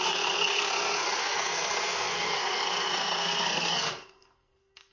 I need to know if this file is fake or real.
fake